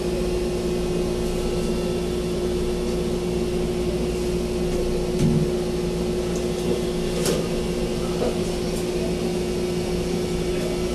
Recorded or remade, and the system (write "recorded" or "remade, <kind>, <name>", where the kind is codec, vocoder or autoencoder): recorded